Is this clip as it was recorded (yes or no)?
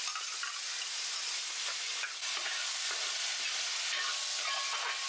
yes